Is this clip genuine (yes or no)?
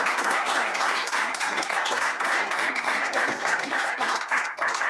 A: no